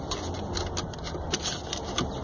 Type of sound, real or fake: real